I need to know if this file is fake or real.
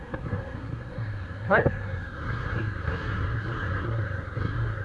fake